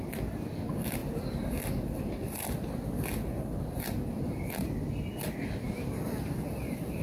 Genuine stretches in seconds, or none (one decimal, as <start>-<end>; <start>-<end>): 0.0-7.0